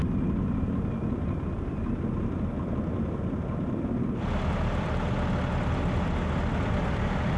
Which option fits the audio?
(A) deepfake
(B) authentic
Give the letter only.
B